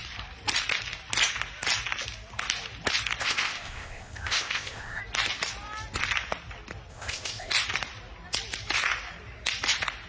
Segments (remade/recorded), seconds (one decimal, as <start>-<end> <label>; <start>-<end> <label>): 0.0-3.2 recorded; 3.2-5.0 remade; 5.0-6.9 recorded; 6.9-7.5 remade; 7.5-10.1 recorded